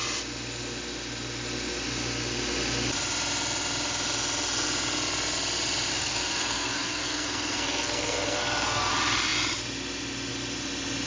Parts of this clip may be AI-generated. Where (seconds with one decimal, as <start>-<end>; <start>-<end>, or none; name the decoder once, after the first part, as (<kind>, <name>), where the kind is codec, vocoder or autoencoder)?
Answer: 5.9-8.9 (codec, SNAC)